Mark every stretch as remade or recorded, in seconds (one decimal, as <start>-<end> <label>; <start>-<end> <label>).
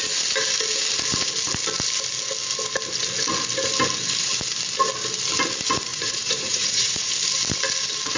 0.0-5.9 recorded; 5.9-7.1 remade; 7.1-8.2 recorded